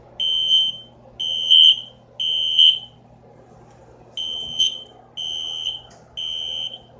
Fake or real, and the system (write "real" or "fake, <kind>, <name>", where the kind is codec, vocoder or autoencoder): real